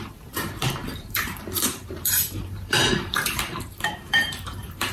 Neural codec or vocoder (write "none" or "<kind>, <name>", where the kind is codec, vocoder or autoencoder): vocoder, BigVGAN v2